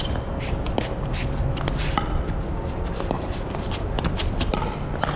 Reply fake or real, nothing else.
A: real